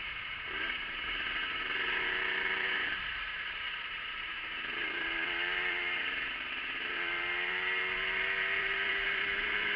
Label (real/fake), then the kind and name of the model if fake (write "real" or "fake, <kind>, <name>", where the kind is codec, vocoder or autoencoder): fake, vocoder, BigVGAN v2